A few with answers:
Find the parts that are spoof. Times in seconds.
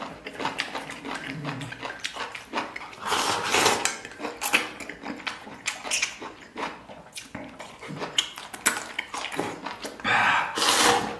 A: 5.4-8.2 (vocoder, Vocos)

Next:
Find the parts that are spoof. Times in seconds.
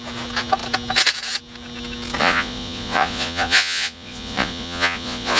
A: 2.2-5.4 (vocoder, Vocos)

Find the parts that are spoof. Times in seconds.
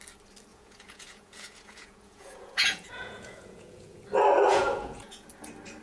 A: 0.5-4.0 (vocoder, Vocos); 4.5-5.3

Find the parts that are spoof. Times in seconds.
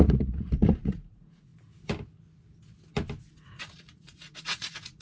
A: 0.0-1.5 (vocoder, Vocos); 3.3-5.0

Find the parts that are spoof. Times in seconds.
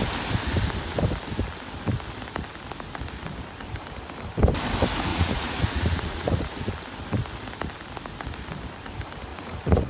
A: 5.1-6.7 (vocoder, Vocos); 9.3-9.9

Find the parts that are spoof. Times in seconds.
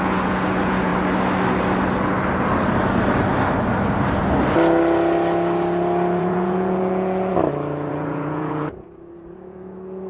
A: 0.0-0.9 (vocoder, Vocos); 6.2-7.3; 7.9-10.1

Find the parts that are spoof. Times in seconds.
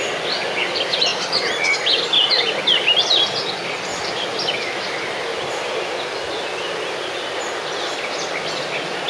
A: none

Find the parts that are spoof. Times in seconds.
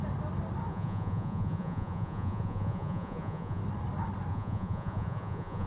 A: 0.7-3.6 (vocoder, Vocos); 4.3-5.7